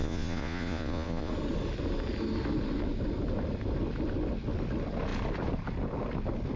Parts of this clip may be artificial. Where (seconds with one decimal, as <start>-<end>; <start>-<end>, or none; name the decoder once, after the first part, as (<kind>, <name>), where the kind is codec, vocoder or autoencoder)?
0.0-1.3 (vocoder, Vocos)